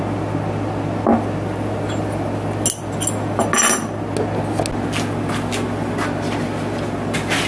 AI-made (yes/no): no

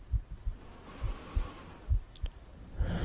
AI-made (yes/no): no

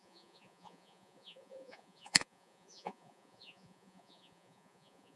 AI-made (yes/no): yes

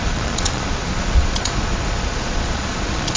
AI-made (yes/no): yes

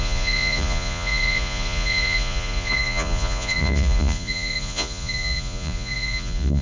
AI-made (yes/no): yes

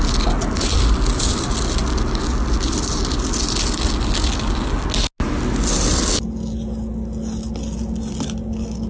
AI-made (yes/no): no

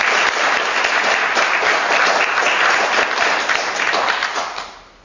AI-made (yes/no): no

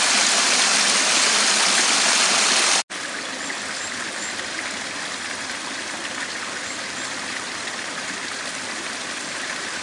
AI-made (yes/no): no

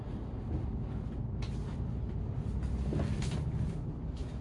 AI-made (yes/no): no